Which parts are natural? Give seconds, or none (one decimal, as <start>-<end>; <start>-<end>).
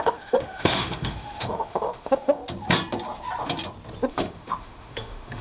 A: 2.4-4.1